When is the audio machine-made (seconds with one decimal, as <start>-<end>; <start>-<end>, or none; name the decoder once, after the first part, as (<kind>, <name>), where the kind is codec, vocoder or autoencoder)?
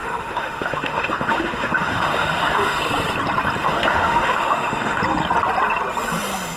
0.0-2.8 (autoencoder, DAC-VAE); 3.6-5.0